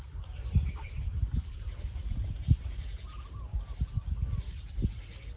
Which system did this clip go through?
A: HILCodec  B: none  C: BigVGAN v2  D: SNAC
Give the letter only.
B